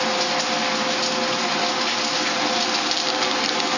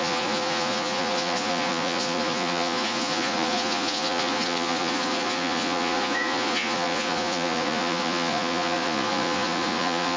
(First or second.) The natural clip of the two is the first